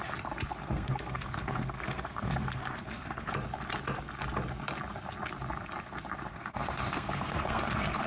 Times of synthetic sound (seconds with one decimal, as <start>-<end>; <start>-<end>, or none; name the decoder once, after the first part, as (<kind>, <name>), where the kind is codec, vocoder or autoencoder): 0.6-3.3 (codec, SNAC); 6.3-8.1